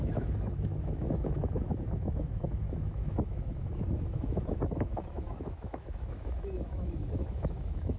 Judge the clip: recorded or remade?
remade